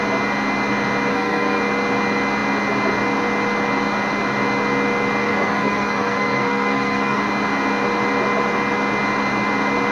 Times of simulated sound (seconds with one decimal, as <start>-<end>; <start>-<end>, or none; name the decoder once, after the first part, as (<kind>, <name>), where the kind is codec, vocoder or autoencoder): 1.1-1.6 (codec, SNAC); 5.2-7.2

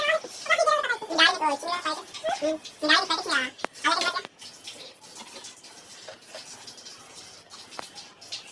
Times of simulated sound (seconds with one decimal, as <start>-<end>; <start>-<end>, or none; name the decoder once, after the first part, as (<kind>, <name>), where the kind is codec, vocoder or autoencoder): none

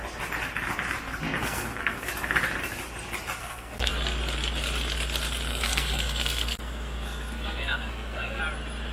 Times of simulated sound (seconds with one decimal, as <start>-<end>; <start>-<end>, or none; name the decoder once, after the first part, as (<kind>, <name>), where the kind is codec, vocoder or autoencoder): 1.4-2.1 (codec, SNAC); 3.4-3.9; 5.5-8.4

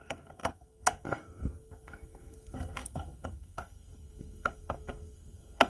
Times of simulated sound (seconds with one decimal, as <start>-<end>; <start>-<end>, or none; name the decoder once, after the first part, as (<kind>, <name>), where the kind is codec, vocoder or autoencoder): 0.0-5.7 (codec, SNAC)